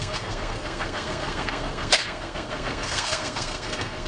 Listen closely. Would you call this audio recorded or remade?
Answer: remade